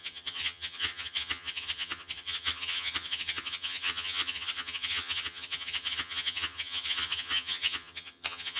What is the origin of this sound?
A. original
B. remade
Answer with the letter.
B